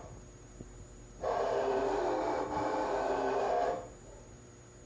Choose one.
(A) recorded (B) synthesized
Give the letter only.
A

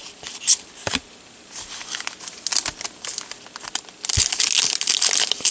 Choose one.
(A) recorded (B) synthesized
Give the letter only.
A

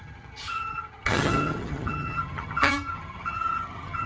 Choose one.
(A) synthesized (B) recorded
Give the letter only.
A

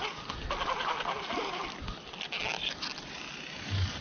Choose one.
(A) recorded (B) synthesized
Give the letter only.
A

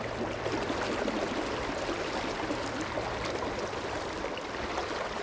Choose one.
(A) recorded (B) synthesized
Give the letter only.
A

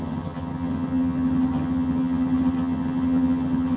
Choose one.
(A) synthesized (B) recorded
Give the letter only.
A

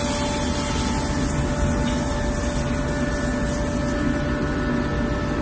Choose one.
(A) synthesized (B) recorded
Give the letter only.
B